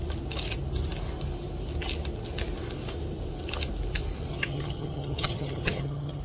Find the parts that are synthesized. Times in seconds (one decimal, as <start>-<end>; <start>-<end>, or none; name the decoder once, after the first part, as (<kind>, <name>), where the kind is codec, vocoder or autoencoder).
4.3-6.2 (vocoder, HiFi-GAN)